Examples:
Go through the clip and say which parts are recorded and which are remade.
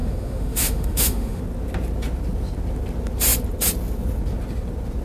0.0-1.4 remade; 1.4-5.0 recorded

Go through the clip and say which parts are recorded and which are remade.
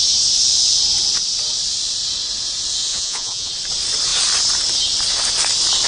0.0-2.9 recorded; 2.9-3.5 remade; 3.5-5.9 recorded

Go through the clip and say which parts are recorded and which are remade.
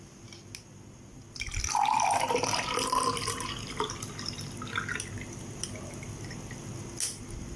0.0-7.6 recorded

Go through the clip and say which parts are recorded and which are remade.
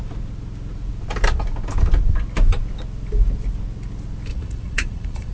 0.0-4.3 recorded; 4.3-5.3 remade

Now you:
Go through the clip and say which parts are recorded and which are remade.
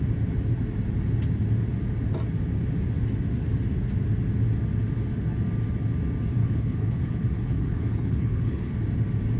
0.0-6.4 recorded; 6.4-8.7 remade; 8.7-9.4 recorded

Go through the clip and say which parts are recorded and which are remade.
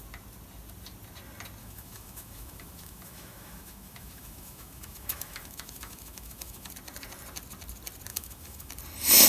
0.0-1.6 recorded; 1.6-6.7 remade; 6.7-8.1 recorded; 8.1-8.7 remade; 8.7-9.3 recorded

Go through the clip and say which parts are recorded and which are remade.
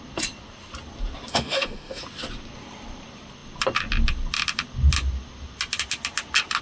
0.0-1.3 recorded; 1.3-2.0 remade; 2.0-6.6 recorded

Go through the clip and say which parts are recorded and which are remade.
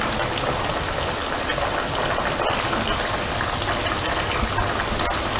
0.0-5.4 recorded